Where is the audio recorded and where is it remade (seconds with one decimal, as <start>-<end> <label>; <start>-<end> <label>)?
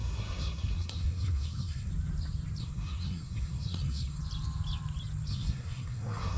0.0-1.9 remade; 1.9-2.6 recorded; 2.6-4.2 remade; 4.2-5.3 recorded; 5.3-6.4 remade